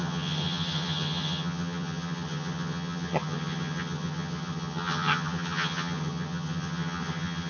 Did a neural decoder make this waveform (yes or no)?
yes